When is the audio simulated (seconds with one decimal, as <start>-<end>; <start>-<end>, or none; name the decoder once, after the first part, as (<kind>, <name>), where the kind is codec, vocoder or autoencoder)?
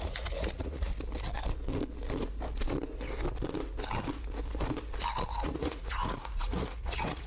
0.0-0.9 (vocoder, Vocos); 5.3-7.3